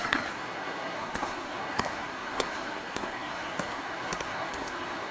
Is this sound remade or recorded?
remade